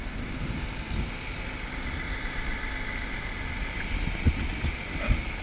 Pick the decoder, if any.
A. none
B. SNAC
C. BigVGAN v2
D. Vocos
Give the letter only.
A